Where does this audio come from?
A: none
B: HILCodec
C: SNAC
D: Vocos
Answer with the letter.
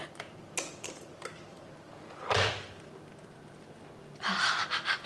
A